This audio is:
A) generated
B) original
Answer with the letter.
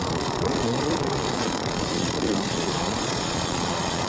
A